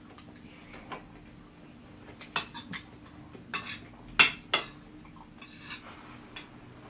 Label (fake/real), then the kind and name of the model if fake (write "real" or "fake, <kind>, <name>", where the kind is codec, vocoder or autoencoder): real